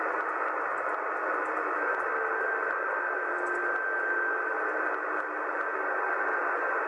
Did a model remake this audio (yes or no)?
no